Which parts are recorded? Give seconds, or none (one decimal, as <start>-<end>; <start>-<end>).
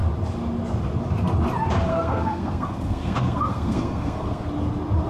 0.0-1.9; 4.5-5.1